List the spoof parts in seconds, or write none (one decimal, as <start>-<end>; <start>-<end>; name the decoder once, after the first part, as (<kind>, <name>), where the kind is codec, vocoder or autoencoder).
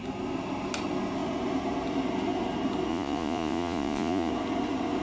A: 2.9-4.3 (vocoder, Vocos)